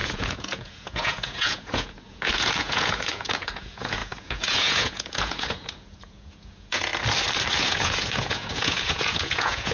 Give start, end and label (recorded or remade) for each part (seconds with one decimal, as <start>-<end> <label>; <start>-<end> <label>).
0.0-6.9 remade; 6.9-7.5 recorded; 7.5-9.7 remade